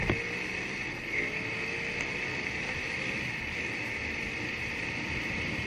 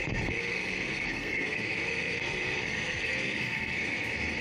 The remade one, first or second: second